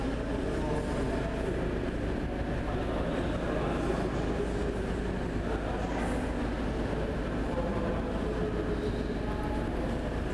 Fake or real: real